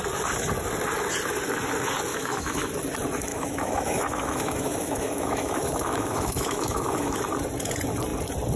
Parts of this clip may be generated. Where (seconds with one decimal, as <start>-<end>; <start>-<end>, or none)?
2.1-2.7; 3.3-7.2